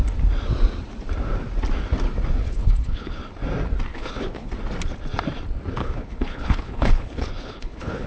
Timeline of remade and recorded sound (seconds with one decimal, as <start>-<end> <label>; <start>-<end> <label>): 0.0-2.4 recorded; 2.4-3.2 remade; 3.2-3.9 recorded; 3.9-4.5 remade; 4.5-5.8 recorded; 5.8-8.1 remade